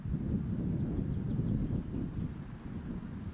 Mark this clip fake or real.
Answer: real